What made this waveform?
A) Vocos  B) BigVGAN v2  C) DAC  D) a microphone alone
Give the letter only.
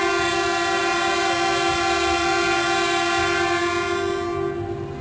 D